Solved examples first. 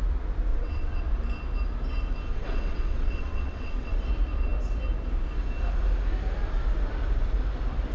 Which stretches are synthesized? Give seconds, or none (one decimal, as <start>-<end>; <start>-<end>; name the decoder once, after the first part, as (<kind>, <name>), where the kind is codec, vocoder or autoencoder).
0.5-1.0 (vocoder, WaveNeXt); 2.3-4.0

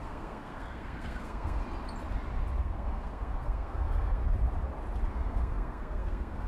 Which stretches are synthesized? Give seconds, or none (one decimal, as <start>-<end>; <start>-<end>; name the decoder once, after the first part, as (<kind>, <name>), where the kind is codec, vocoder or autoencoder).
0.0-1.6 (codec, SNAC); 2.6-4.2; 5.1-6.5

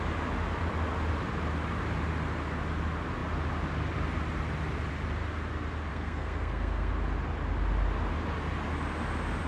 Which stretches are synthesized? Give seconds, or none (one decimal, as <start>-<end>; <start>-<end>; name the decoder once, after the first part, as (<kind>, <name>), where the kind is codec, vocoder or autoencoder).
5.9-6.9 (codec, SNAC)

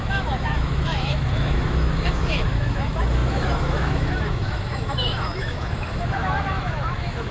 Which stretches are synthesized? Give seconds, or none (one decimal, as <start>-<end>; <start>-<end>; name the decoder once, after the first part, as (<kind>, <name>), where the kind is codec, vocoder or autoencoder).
0.0-7.3 (autoencoder, DAC-VAE)

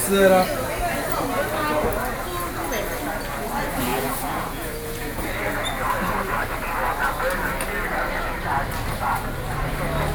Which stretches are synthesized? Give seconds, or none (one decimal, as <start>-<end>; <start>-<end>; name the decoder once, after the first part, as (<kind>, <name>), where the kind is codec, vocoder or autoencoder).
3.9-5.3 (vocoder, Vocos)

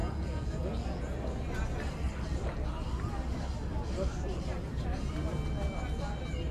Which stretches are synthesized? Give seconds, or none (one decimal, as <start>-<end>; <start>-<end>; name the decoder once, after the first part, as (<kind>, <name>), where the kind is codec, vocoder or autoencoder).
0.0-1.0 (vocoder, Vocos)

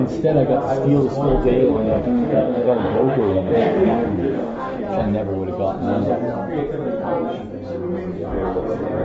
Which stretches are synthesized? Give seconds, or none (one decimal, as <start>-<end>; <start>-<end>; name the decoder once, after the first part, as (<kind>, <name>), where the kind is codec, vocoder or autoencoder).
1.6-4.8 (autoencoder, DAC-VAE)

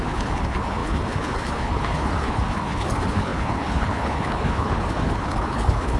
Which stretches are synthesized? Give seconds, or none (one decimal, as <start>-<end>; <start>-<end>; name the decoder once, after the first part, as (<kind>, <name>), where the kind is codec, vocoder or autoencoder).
0.0-6.0 (codec, HILCodec)